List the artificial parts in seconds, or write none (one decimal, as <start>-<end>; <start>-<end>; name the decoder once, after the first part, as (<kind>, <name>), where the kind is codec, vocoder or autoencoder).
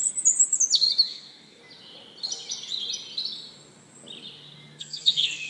1.1-1.6 (codec, SNAC); 4.8-5.5